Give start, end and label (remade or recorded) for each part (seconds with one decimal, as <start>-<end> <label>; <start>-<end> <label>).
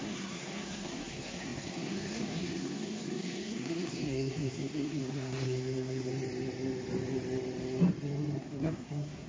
0.0-6.1 remade; 6.1-8.4 recorded; 8.4-9.3 remade